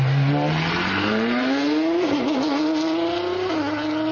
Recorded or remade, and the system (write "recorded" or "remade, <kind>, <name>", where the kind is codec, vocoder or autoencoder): recorded